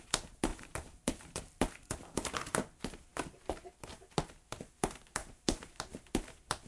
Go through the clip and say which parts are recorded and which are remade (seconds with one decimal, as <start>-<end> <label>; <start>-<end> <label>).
0.0-0.5 recorded; 0.5-1.4 remade; 1.4-5.2 recorded; 5.2-5.8 remade; 5.8-6.7 recorded